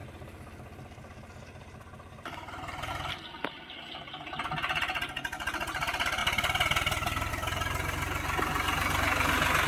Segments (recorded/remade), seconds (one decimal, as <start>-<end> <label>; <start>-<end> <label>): 0.0-2.9 remade; 2.9-6.2 recorded; 6.2-7.3 remade; 7.3-9.7 recorded